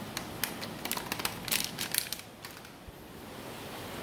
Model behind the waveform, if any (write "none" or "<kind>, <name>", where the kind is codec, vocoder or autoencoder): none